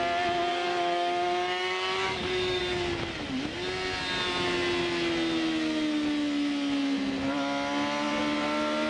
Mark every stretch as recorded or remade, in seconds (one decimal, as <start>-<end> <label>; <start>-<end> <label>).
0.0-0.5 recorded; 0.5-2.6 remade; 2.6-8.9 recorded